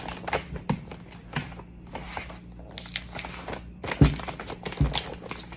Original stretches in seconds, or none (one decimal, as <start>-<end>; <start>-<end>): 0.0-5.6